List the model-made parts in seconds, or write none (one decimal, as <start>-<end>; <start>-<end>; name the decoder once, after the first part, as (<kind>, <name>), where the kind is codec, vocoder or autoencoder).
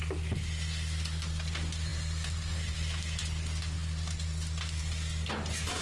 none